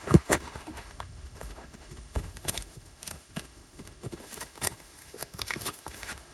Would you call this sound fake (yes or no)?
yes